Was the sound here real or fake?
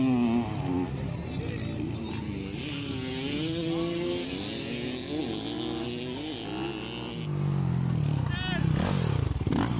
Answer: real